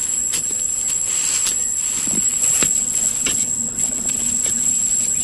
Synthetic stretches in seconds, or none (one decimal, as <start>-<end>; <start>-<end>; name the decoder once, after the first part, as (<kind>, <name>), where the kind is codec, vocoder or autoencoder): 2.4-4.7 (vocoder, WaveNeXt)